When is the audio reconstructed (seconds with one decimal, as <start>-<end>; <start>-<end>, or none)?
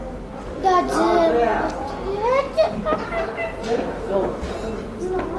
none